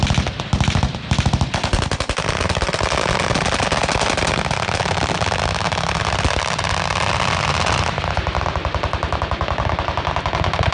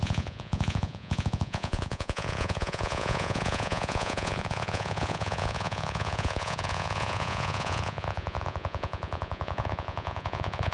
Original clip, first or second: first